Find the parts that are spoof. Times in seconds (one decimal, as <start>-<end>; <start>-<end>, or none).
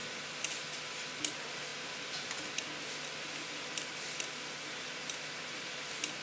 none